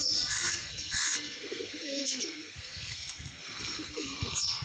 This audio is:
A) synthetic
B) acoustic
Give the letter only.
A